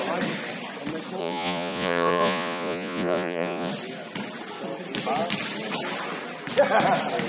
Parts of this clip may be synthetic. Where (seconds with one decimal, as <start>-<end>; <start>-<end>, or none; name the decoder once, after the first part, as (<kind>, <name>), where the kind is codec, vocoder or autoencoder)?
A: 1.2-3.7 (vocoder, Vocos)